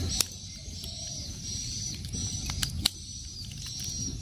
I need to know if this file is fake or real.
fake